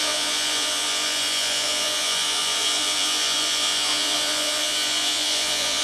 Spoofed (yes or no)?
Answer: yes